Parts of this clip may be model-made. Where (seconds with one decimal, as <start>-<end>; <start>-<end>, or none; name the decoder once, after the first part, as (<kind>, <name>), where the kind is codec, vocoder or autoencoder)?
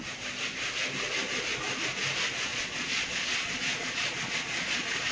2.5-5.1 (vocoder, Vocos)